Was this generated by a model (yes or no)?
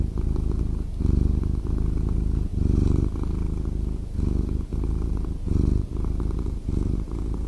no